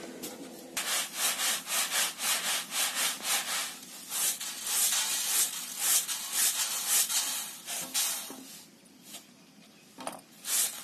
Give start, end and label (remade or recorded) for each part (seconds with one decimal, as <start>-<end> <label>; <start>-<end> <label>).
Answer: 0.0-10.8 recorded